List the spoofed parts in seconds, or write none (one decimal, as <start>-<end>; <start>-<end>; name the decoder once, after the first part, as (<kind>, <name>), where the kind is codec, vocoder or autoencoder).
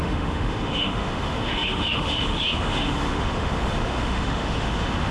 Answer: 0.0-5.1 (autoencoder, DAC-VAE)